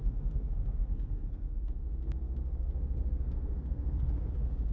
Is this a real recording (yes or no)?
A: no